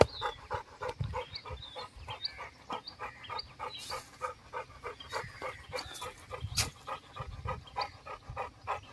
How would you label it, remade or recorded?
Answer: recorded